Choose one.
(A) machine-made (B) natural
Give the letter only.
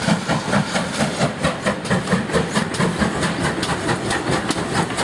B